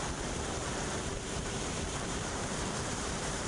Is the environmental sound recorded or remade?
remade